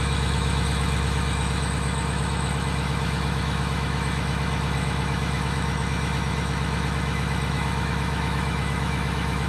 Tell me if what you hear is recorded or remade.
remade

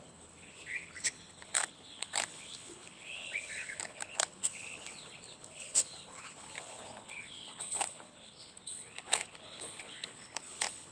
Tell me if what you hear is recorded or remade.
remade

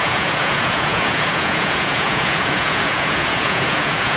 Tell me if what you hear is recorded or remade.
remade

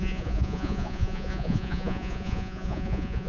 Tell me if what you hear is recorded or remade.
remade